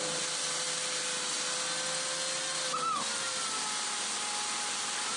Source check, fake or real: real